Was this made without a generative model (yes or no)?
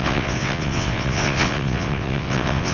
no